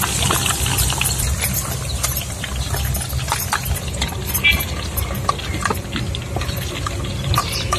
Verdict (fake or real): real